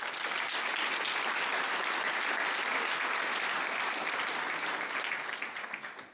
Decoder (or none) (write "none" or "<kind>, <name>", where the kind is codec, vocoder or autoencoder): none